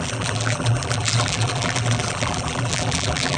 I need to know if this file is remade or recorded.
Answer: remade